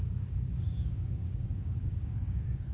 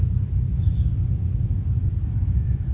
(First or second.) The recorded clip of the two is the second